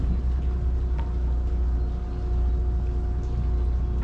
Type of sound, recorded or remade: recorded